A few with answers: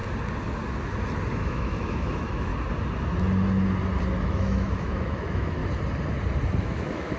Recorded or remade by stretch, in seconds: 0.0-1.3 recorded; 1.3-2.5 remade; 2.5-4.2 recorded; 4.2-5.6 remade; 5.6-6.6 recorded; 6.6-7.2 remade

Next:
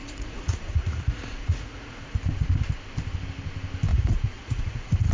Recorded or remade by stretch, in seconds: 0.0-2.2 remade; 2.2-3.9 recorded; 3.9-5.1 remade

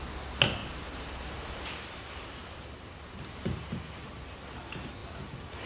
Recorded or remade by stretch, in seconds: 0.0-0.6 recorded; 0.6-4.0 remade; 4.0-5.0 recorded; 5.0-5.7 remade

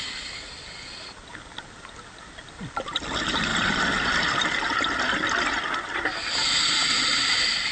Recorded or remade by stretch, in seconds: 0.0-7.7 recorded

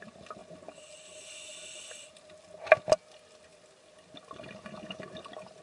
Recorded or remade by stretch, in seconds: 0.0-5.6 recorded